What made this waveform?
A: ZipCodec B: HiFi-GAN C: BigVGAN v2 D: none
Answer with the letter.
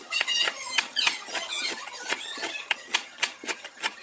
B